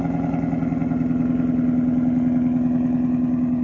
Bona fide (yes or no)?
yes